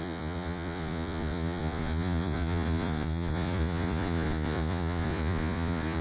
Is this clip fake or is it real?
fake